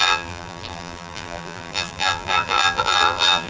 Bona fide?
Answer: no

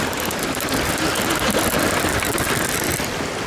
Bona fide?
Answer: yes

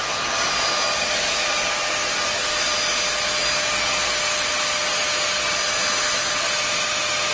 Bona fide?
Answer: yes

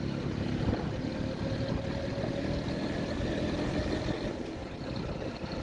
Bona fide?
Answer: yes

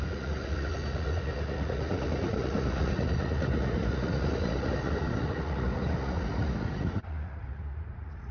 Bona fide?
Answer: no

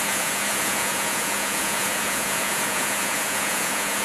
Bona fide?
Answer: no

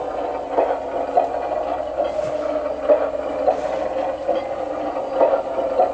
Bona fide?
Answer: yes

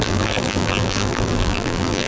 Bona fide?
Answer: no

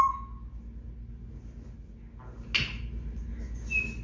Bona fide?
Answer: yes